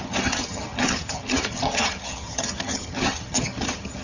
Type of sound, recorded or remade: remade